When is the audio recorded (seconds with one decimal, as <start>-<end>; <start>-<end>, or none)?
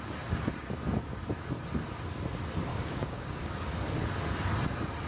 0.0-2.7; 3.5-5.1